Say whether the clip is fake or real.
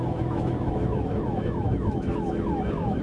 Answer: fake